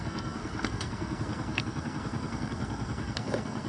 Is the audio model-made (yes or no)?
yes